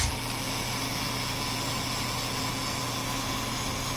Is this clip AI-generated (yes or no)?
no